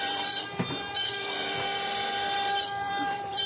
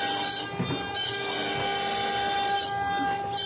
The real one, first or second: second